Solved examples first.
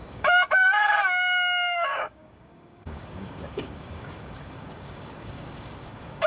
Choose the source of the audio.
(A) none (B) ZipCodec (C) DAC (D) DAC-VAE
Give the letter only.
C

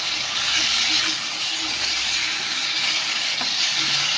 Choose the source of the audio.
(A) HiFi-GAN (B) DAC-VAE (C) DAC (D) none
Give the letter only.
C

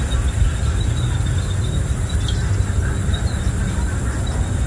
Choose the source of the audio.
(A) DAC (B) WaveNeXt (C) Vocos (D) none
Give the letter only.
D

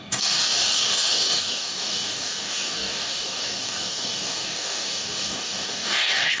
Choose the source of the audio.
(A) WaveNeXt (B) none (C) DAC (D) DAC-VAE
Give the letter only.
C